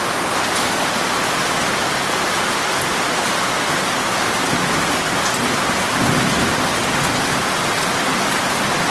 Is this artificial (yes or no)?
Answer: no